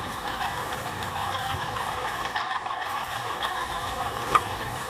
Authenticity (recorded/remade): remade